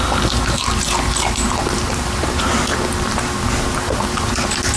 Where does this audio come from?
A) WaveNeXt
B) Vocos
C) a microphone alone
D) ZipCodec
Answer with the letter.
C